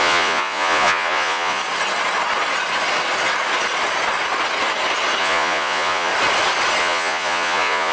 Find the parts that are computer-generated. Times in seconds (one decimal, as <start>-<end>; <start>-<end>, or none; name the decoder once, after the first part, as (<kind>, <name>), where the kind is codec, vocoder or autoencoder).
0.0-1.6 (vocoder, Vocos); 5.2-6.1; 6.8-7.9

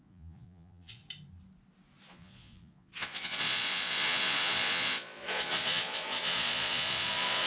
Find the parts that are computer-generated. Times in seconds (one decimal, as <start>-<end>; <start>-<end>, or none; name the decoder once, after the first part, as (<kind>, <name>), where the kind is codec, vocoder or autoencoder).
0.0-1.0 (vocoder, Vocos); 2.1-7.5